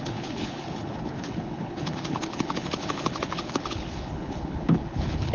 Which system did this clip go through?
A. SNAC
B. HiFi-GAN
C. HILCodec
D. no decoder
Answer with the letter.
C